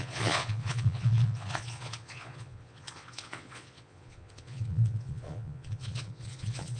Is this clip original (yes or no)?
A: no